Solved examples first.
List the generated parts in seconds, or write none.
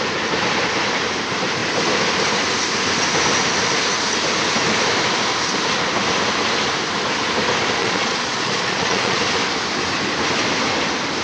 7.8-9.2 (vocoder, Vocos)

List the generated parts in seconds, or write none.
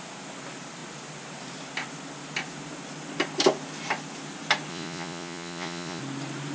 4.7-6.0 (vocoder, Vocos)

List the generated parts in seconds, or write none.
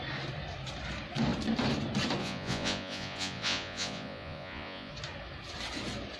2.2-4.9 (vocoder, Vocos)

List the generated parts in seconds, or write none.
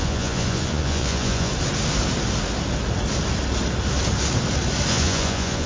0.0-1.5 (vocoder, Vocos); 4.9-5.7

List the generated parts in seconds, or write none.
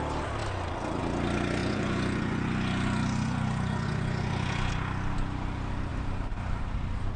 1.6-4.7 (vocoder, Vocos)